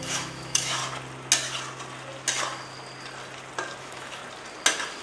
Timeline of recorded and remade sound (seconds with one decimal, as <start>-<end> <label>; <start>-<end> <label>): 0.0-0.8 remade; 0.8-3.8 recorded; 3.8-4.2 remade; 4.2-5.0 recorded